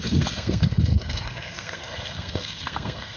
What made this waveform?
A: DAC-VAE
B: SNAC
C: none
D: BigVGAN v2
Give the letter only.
B